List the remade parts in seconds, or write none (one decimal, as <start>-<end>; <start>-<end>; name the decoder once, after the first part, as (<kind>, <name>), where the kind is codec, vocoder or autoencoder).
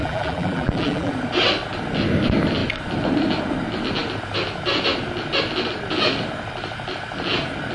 0.0-1.1 (vocoder, BigVGAN v2)